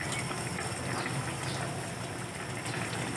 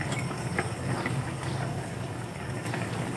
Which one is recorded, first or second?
first